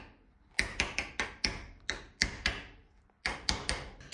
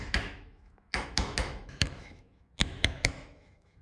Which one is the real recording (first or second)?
first